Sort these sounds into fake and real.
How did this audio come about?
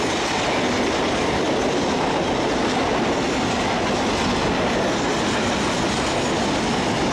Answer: real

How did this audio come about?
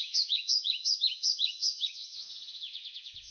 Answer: fake